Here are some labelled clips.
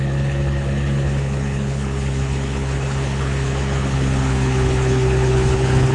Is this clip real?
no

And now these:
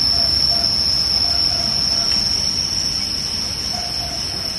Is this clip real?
yes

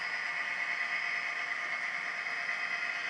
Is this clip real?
yes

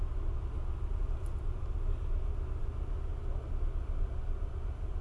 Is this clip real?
yes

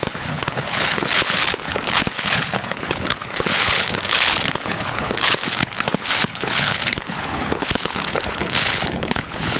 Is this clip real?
no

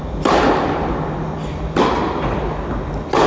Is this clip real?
yes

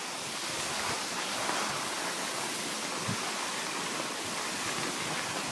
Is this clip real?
yes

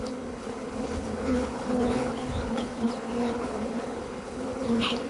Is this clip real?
no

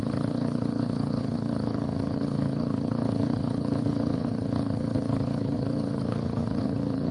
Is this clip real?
no